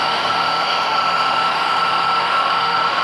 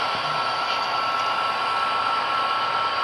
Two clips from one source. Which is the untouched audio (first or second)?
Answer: second